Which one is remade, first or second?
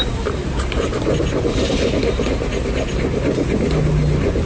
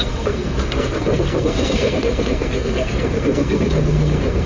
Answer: second